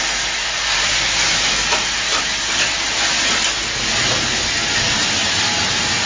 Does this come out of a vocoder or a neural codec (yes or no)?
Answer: no